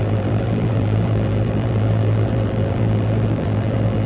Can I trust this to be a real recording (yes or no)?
no